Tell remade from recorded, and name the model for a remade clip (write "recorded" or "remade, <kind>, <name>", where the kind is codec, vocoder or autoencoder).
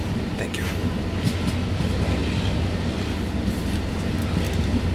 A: recorded